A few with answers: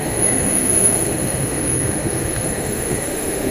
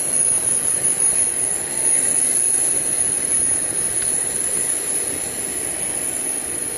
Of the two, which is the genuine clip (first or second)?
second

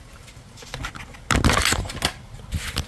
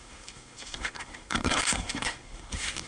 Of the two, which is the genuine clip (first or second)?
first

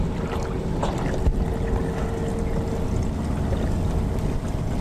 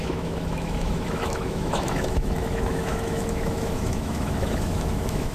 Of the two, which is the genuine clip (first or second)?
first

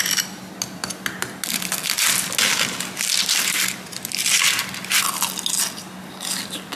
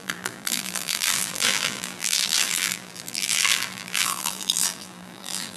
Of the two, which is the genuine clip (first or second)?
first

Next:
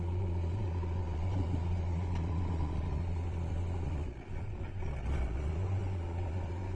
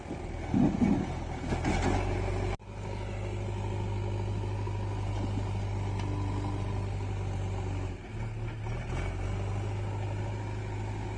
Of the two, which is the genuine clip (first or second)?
second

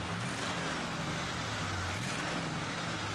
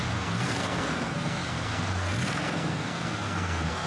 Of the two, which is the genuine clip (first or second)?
first